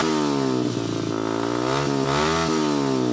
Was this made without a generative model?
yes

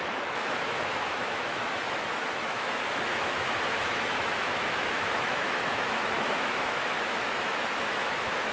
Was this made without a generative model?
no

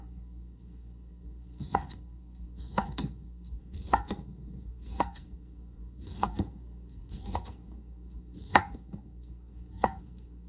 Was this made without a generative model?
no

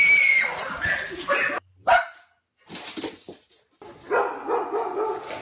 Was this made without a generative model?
yes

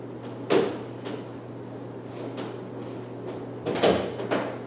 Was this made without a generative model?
yes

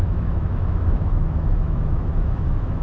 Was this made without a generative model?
no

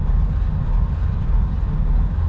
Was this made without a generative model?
yes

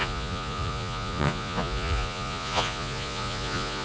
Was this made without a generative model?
no